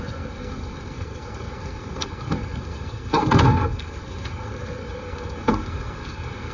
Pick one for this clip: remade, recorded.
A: remade